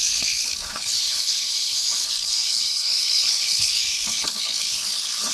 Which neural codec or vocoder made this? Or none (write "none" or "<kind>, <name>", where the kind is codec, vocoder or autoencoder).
codec, HILCodec